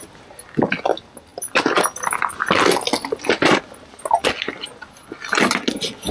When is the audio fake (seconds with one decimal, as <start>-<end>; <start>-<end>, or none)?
none